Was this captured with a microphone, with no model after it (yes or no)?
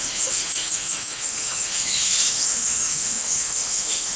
no